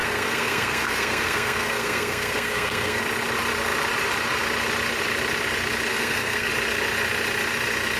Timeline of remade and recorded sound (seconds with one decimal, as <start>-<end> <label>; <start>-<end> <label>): 0.0-3.0 remade; 3.0-5.9 recorded; 5.9-6.5 remade; 6.5-8.0 recorded